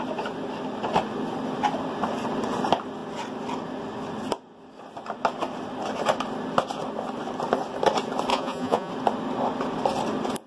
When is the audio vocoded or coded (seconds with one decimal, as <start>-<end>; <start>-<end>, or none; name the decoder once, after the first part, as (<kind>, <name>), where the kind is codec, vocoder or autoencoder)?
8.3-8.9 (vocoder, Vocos)